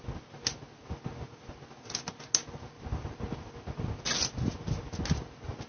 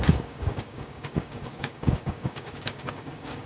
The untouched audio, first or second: first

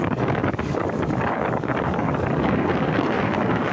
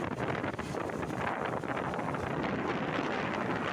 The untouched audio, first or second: second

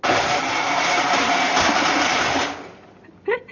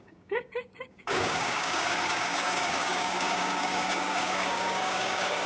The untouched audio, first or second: first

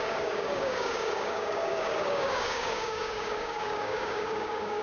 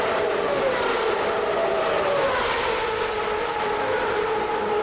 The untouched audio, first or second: second